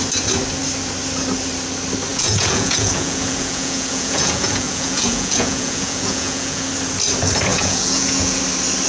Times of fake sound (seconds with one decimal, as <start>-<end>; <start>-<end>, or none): 2.1-6.7; 7.5-8.4